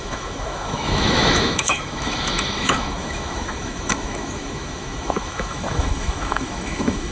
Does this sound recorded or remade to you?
remade